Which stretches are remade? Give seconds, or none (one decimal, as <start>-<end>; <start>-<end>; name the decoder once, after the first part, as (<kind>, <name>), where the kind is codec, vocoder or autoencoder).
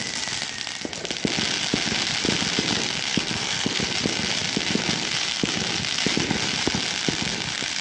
3.1-3.8 (codec, SNAC)